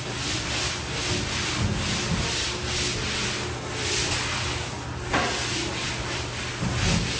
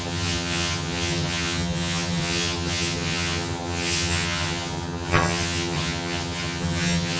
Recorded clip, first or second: first